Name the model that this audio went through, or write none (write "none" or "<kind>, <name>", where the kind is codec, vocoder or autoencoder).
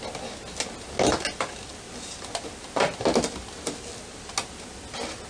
none